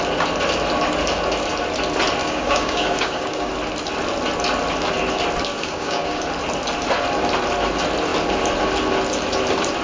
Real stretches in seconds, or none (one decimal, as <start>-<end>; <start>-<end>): 0.0-2.2; 3.5-5.5; 6.2-9.8